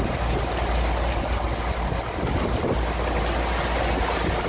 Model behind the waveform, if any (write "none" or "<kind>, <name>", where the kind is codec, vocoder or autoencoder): none